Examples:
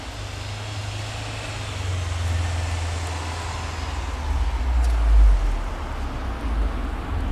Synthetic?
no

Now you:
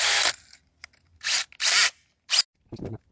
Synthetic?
no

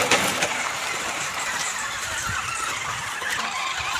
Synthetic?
yes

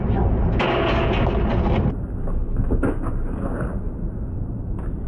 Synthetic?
no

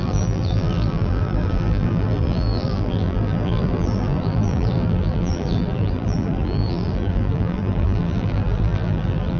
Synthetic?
yes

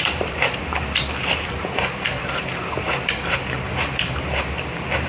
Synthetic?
yes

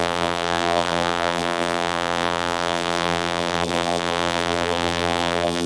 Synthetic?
yes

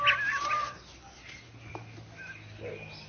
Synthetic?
no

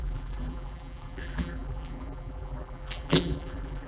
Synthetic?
yes